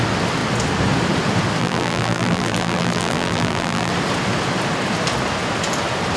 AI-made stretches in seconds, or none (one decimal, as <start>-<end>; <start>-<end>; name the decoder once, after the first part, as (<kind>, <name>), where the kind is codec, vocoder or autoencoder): 1.6-3.9 (vocoder, BigVGAN v2)